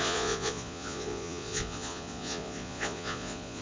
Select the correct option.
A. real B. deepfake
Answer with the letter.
B